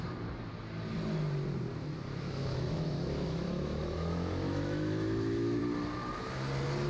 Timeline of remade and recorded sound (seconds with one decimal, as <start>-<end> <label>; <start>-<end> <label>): 0.0-1.7 recorded; 1.7-5.6 remade; 5.6-6.9 recorded